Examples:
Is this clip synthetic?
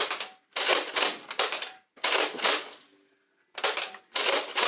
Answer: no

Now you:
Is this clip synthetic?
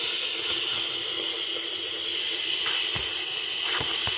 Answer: no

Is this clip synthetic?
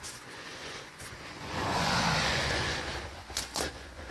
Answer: yes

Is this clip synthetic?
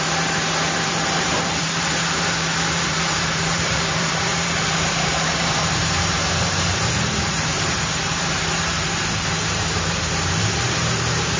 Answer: yes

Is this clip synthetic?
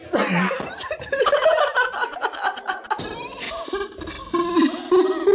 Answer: no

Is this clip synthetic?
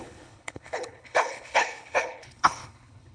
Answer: yes